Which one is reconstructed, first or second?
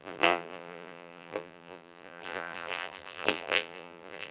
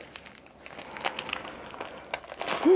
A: first